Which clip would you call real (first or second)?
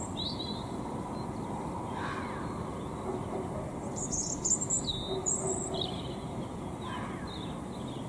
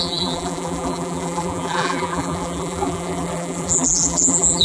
first